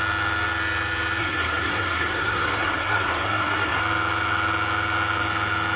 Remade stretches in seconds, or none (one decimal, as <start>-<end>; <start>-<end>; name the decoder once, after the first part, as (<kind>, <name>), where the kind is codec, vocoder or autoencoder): 1.2-3.8 (codec, SNAC)